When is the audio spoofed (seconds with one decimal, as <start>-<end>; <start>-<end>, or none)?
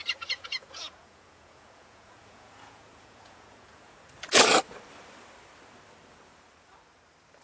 0.0-4.1